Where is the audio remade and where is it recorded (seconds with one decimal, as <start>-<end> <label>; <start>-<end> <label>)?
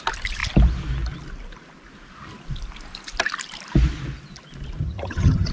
0.0-4.8 recorded; 4.8-5.5 remade